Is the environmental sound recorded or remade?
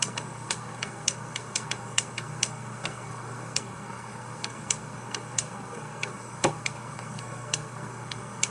remade